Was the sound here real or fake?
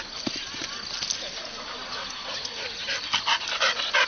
real